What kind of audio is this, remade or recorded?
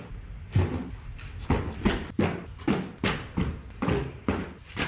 recorded